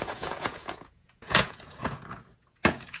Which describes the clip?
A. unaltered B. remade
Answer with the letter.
B